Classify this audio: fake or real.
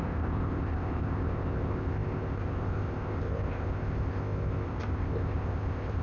fake